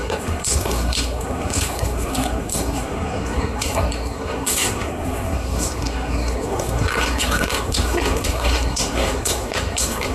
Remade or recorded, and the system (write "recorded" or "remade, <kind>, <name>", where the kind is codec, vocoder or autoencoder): remade, codec, SNAC